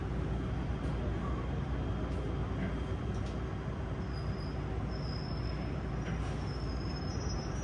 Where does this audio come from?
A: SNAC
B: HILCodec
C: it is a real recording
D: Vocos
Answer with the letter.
C